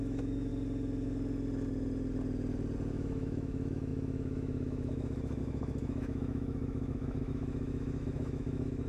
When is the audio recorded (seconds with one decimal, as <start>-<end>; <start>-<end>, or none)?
0.5-2.9